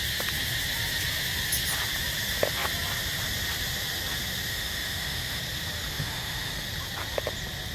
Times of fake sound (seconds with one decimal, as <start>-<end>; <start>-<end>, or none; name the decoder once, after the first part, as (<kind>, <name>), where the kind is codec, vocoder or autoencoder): 4.5-5.4 (autoencoder, DAC-VAE); 5.9-6.5